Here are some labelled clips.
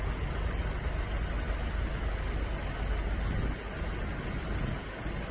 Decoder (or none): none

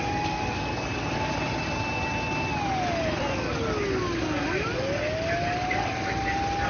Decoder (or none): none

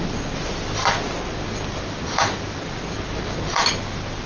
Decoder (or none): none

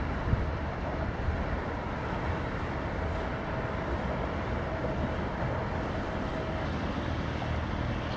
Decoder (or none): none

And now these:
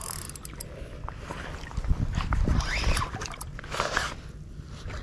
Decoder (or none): none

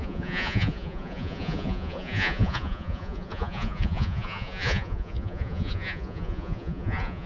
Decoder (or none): vocoder, Vocos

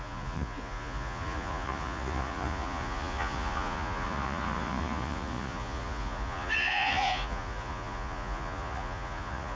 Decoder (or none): vocoder, Vocos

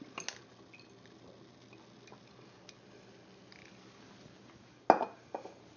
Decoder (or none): none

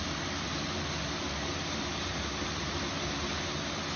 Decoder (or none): none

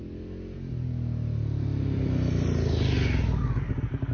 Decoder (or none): none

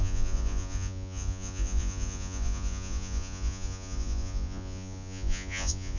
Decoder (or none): vocoder, Vocos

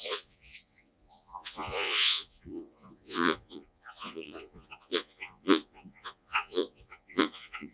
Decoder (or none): vocoder, Vocos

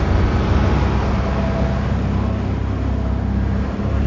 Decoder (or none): none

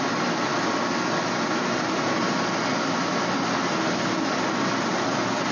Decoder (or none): none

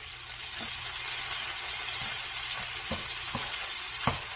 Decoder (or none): none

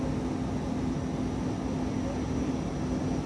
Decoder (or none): none